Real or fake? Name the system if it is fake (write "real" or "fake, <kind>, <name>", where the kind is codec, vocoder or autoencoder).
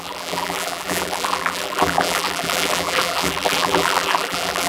fake, vocoder, BigVGAN v2